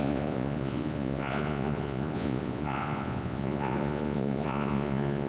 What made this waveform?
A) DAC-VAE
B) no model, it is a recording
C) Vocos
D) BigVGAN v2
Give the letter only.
C